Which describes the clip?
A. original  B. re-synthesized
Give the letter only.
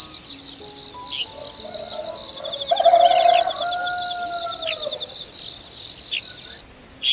A